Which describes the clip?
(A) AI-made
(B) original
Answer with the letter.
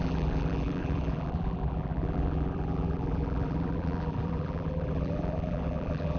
A